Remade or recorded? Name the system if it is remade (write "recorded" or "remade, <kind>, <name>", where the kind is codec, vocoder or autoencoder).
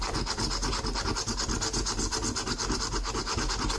recorded